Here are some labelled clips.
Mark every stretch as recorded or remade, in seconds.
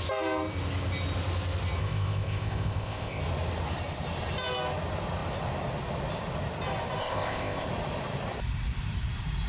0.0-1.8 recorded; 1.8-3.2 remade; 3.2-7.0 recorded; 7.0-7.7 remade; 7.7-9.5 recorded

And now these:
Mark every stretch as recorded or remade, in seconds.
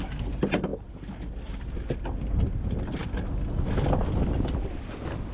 0.0-5.3 recorded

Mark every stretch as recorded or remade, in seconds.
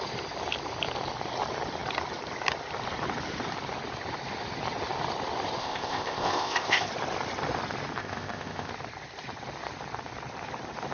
0.0-5.6 recorded; 5.6-6.9 remade; 6.9-8.0 recorded; 8.0-8.7 remade; 8.7-10.9 recorded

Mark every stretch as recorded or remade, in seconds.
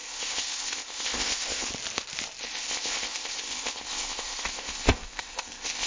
0.0-1.7 remade; 1.7-2.4 recorded; 2.4-5.9 remade